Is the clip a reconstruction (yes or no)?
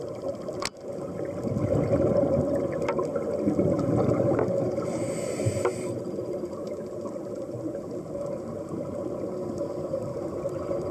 no